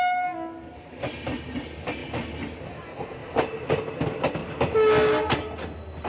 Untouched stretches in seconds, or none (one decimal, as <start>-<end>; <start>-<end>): 0.0-6.1